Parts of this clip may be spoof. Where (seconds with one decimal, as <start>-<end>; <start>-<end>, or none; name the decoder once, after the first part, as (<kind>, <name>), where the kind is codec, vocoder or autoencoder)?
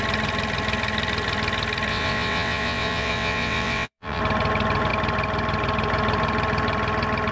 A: 1.9-4.2 (vocoder, WaveNeXt)